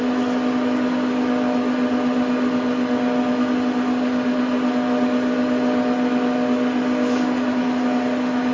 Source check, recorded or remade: recorded